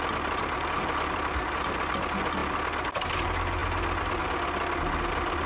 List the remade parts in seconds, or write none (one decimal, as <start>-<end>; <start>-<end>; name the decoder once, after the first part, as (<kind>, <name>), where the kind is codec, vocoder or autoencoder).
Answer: none

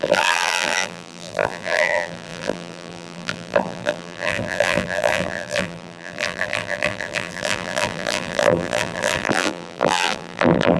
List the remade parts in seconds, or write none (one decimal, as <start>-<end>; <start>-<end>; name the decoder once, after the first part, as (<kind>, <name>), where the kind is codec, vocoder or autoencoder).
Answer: 0.0-10.8 (vocoder, BigVGAN v2)

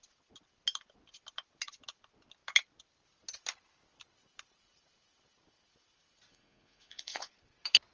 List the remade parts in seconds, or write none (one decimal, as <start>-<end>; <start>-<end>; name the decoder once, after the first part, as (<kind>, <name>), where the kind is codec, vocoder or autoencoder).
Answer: 6.3-7.3 (vocoder, Vocos)

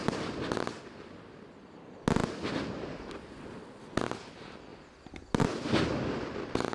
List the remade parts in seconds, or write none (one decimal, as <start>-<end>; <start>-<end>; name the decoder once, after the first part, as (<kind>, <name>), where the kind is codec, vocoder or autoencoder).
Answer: none

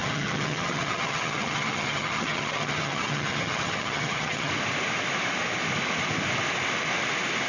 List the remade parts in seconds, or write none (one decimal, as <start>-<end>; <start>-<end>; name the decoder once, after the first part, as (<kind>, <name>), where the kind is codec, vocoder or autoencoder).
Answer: 0.0-4.5 (vocoder, HiFi-GAN)

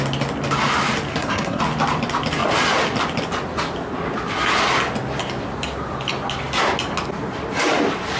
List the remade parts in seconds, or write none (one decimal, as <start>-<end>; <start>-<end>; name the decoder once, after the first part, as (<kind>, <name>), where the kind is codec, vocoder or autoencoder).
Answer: 1.1-1.6 (codec, SNAC)

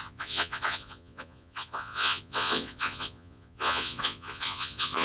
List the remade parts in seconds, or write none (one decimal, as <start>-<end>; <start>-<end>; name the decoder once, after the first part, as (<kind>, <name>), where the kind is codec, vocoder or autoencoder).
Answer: 0.0-5.0 (vocoder, Vocos)